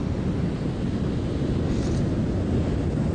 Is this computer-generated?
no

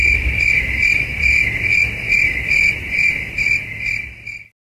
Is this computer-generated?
no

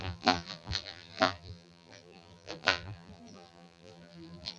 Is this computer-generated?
yes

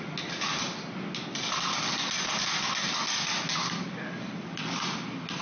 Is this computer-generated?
no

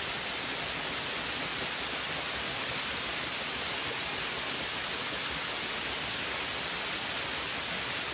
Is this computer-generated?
no